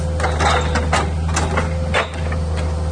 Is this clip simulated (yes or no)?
no